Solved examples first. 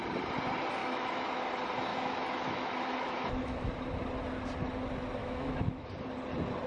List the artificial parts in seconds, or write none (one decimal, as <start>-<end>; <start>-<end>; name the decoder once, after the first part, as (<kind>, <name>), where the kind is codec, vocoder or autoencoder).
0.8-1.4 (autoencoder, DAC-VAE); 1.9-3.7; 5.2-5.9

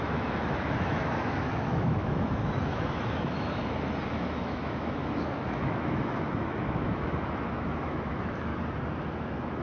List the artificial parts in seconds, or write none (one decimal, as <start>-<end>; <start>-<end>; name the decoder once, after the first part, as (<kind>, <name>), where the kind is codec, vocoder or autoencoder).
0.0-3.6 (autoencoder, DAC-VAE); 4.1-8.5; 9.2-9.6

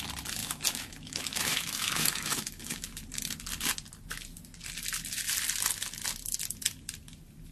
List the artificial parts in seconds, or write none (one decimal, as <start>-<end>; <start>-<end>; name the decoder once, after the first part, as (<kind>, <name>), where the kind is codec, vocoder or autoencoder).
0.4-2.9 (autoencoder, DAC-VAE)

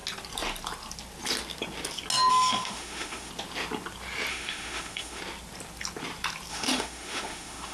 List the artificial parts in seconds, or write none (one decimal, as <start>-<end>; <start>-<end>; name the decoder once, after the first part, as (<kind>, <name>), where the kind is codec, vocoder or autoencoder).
2.3-3.3 (autoencoder, DAC-VAE); 4.3-5.2; 6.5-7.7

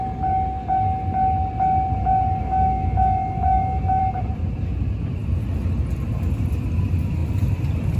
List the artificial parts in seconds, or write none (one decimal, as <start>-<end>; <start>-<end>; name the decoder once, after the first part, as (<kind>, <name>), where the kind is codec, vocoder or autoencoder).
2.4-4.0 (autoencoder, DAC-VAE)

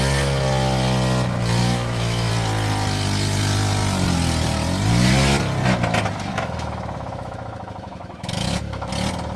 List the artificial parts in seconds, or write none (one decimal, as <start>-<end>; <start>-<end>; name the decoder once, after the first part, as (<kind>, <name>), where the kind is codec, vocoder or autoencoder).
1.6-2.3 (autoencoder, DAC-VAE); 6.3-8.9

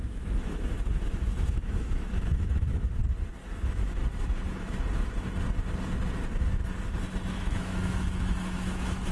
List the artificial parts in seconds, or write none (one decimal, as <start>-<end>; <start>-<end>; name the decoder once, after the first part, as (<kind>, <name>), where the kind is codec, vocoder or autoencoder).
0.0-3.0 (autoencoder, DAC-VAE); 3.6-4.0; 7.3-9.1